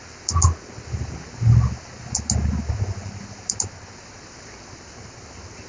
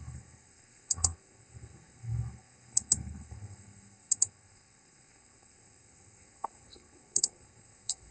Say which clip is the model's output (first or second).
second